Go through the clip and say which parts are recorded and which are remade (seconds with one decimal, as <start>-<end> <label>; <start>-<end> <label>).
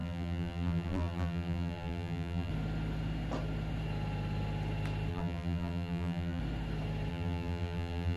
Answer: 0.0-2.5 remade; 2.5-5.1 recorded; 5.1-6.4 remade; 6.4-7.1 recorded; 7.1-8.2 remade